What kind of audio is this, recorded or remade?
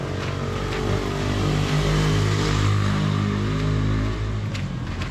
recorded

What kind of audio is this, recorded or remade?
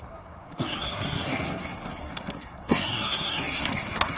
remade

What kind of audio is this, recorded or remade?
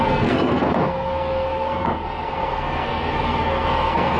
remade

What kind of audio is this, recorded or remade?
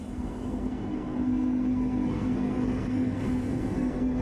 remade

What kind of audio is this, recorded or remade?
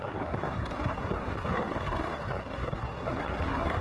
remade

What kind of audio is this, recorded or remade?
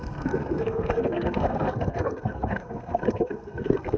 remade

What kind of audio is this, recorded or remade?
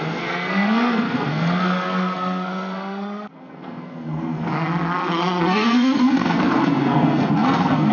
remade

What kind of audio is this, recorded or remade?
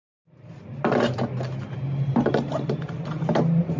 recorded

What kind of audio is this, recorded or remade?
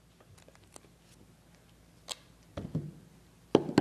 recorded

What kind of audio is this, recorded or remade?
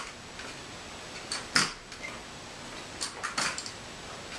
recorded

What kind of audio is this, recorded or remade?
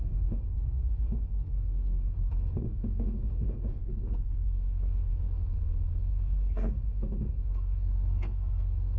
remade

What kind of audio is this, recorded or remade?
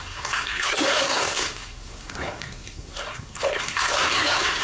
remade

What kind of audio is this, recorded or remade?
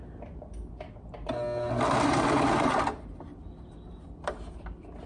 recorded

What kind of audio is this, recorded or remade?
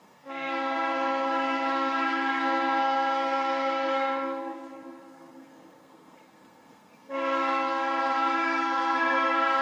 remade